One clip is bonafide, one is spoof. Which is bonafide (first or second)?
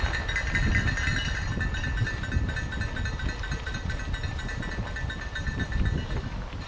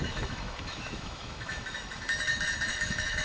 first